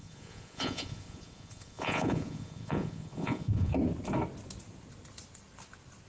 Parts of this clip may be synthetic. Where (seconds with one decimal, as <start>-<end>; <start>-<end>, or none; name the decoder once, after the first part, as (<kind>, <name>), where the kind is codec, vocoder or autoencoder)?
0.0-3.7 (vocoder, Vocos)